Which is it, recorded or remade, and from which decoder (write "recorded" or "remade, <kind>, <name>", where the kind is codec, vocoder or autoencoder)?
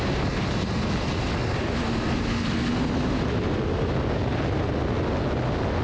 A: recorded